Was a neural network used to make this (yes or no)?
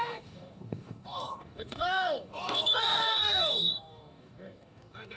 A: yes